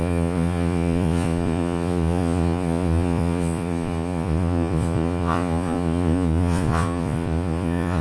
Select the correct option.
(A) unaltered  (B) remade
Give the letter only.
B